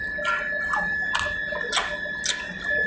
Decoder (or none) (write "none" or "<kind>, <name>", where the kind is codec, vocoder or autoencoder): none